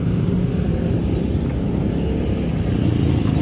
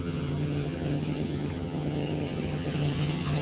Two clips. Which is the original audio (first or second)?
first